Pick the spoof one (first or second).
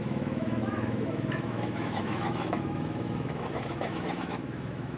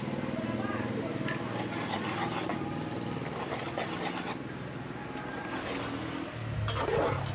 first